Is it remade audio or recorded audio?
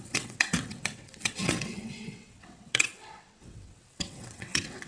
remade